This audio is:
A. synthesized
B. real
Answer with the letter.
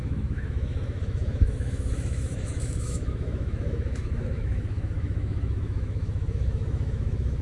A